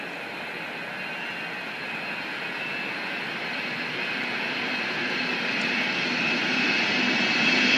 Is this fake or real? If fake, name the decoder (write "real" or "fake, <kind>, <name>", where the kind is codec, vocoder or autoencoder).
fake, vocoder, BigVGAN v2